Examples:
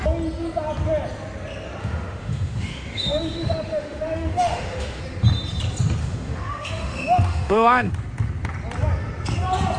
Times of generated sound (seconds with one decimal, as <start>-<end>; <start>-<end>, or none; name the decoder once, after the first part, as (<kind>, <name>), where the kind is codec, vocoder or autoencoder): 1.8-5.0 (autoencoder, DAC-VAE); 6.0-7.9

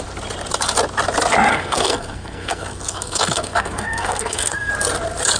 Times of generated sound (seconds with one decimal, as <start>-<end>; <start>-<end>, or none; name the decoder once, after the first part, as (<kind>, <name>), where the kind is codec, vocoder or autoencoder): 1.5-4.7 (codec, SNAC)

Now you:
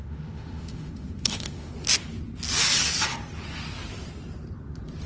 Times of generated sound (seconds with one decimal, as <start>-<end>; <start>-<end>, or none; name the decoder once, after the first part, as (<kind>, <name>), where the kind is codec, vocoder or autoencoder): 0.0-1.7 (autoencoder, DAC-VAE)

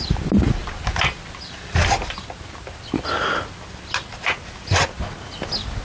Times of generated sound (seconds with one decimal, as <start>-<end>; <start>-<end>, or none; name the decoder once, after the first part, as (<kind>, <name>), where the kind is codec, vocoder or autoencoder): none

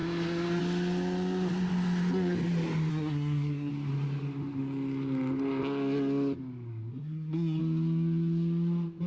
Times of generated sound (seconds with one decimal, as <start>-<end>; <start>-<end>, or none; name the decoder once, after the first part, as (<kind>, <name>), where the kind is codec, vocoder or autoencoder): 0.0-0.6 (codec, SNAC); 2.9-3.7; 6.9-7.6